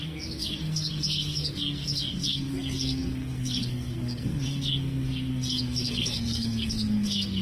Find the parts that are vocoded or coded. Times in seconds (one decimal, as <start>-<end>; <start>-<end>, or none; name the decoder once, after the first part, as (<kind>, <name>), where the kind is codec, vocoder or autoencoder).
0.0-7.4 (codec, SNAC)

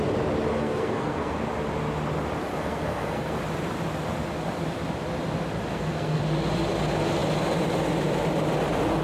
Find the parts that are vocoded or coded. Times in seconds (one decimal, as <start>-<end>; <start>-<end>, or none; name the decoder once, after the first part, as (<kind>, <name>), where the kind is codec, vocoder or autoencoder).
0.5-1.4 (codec, SNAC); 2.5-3.4; 5.7-6.2

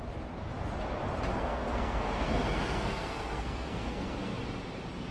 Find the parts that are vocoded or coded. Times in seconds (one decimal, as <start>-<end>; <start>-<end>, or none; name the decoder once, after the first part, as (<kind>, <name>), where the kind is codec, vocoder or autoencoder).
1.3-4.4 (codec, SNAC)

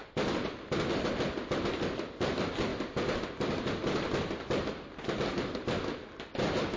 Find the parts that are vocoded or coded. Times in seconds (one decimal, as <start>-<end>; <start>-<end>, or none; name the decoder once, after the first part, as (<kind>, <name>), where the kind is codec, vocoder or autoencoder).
none

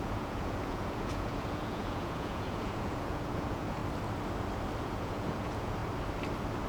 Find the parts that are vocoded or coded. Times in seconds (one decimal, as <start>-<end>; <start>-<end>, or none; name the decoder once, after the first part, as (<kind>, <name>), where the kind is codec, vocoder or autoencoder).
0.0-3.8 (vocoder, Vocos); 4.8-5.8

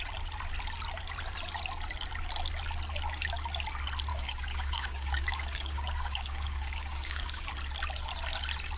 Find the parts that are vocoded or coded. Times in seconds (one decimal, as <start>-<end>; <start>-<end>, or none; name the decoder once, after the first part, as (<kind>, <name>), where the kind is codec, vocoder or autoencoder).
4.1-7.5 (codec, DAC)